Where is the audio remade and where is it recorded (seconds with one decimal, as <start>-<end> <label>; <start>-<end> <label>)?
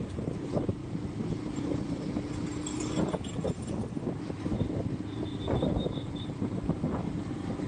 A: 0.0-0.8 remade; 0.8-5.4 recorded; 5.4-7.7 remade